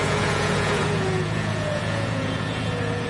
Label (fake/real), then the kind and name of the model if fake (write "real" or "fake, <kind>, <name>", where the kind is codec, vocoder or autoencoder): fake, vocoder, Vocos